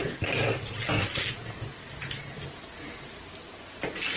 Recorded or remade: recorded